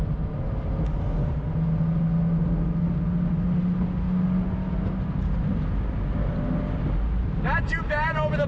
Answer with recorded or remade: recorded